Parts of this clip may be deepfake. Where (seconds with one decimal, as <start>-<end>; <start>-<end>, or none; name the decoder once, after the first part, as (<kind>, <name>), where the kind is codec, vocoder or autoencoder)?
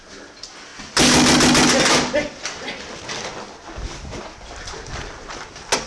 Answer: none